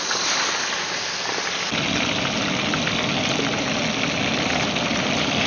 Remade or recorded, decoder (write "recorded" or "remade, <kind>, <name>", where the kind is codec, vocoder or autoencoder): recorded